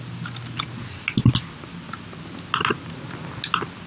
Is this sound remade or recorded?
recorded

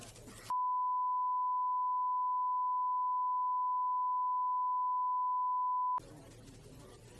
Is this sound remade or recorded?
recorded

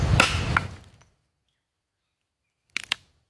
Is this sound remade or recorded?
recorded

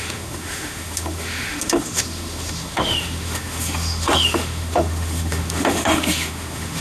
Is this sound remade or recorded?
remade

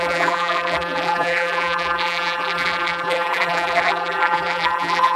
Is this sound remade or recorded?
remade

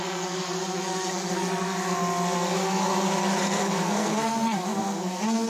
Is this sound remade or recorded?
remade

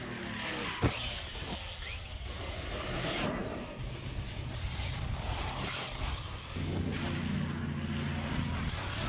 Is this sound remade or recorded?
recorded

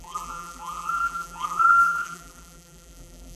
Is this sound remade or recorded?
remade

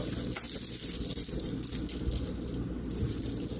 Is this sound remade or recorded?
recorded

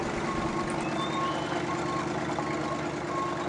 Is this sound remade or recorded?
recorded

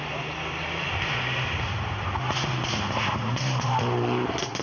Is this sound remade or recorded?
recorded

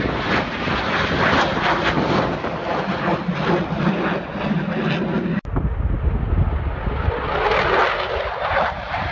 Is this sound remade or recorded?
recorded